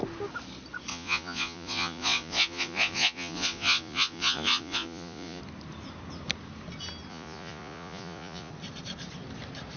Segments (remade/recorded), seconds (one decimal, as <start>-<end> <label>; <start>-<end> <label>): 0.0-0.9 recorded; 0.9-5.4 remade; 5.4-7.1 recorded; 7.1-8.5 remade; 8.5-9.8 recorded